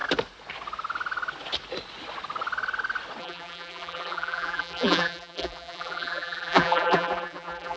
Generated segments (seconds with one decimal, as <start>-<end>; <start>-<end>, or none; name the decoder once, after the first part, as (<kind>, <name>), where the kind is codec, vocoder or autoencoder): 3.2-7.8 (vocoder, BigVGAN v2)